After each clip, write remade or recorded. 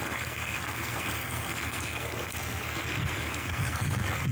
remade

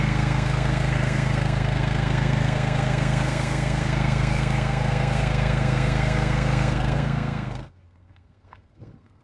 remade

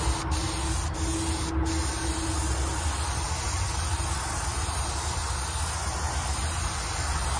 recorded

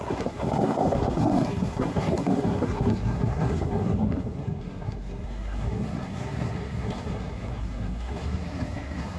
remade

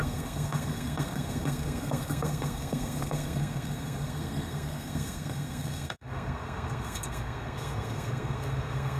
remade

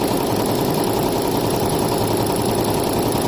recorded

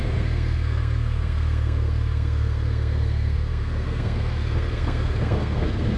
remade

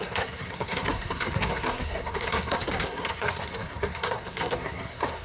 remade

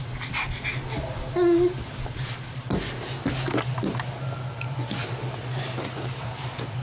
recorded